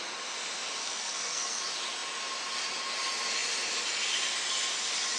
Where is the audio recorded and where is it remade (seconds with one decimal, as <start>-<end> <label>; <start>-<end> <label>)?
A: 0.0-0.8 recorded; 0.8-1.6 remade; 1.6-5.2 recorded